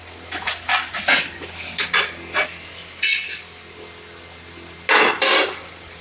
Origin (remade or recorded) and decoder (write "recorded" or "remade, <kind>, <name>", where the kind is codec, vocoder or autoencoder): recorded